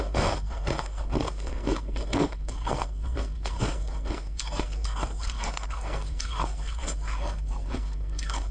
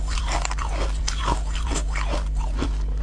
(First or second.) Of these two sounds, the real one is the second